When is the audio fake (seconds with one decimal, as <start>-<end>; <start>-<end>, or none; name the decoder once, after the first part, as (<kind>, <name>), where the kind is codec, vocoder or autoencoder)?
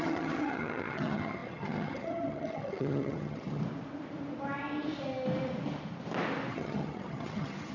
0.0-3.6 (vocoder, HiFi-GAN); 6.5-7.7